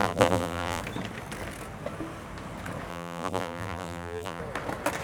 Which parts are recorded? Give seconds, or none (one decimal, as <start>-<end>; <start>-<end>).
0.8-2.9; 4.4-5.0